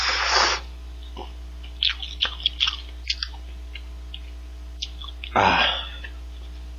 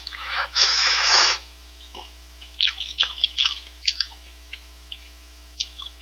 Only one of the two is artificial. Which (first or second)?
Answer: second